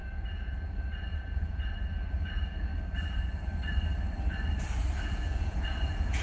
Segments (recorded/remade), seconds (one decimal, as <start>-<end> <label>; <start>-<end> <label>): 0.0-2.7 remade; 2.7-5.0 recorded; 5.0-6.2 remade